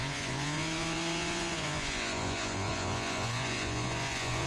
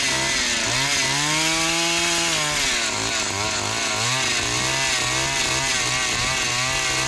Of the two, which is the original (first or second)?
second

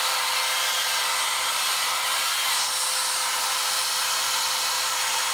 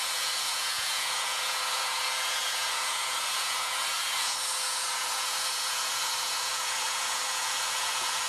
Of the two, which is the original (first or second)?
first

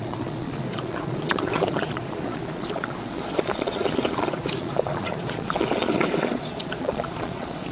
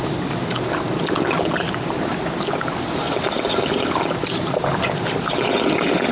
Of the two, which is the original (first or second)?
second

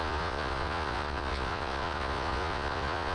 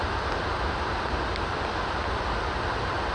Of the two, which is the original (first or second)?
second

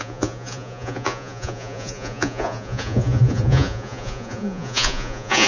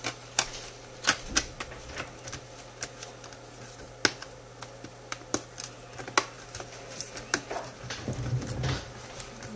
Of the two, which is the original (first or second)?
second